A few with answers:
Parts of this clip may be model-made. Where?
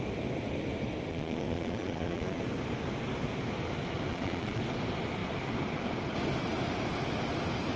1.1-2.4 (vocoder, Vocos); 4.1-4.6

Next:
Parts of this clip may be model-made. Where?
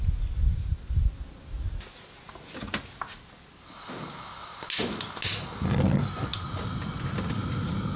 none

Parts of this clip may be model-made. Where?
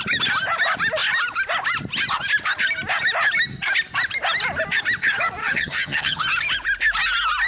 5.4-6.2 (vocoder, HiFi-GAN)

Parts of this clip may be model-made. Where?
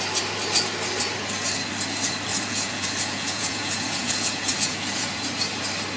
2.3-5.1 (vocoder, Vocos)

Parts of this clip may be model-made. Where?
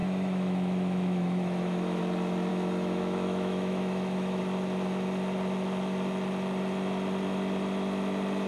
0.0-2.0 (autoencoder, DAC-VAE); 2.5-4.4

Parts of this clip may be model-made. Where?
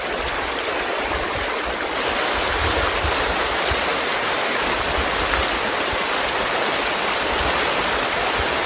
none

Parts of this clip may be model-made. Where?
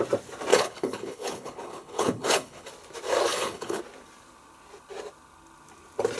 0.5-2.7 (codec, HILCodec); 3.3-3.8